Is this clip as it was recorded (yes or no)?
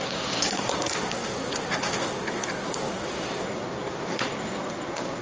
no